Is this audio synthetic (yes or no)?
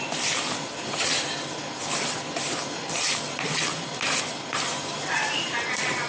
no